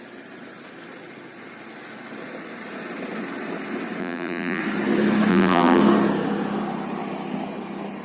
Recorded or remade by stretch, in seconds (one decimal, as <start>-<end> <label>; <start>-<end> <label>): 0.0-4.0 recorded; 4.0-4.6 remade; 4.6-5.3 recorded; 5.3-5.8 remade; 5.8-8.0 recorded